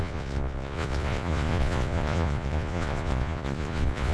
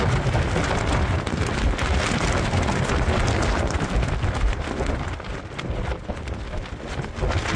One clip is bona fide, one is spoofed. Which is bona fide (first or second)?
second